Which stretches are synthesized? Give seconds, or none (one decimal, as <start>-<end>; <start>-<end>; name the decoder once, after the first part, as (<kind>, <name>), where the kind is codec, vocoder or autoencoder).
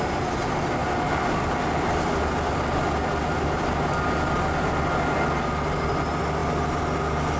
none